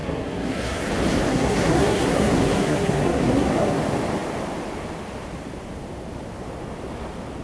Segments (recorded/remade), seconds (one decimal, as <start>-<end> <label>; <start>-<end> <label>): 0.0-0.9 remade; 0.9-1.3 recorded; 1.3-3.8 remade; 3.8-7.4 recorded